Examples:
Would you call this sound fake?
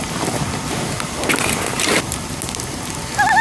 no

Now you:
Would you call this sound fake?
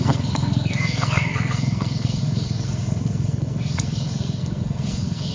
yes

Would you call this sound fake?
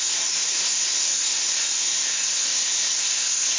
yes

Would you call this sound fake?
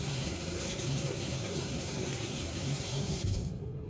yes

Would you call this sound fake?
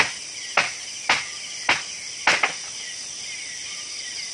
no